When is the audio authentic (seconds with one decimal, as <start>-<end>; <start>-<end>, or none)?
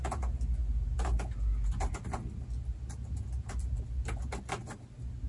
0.0-5.3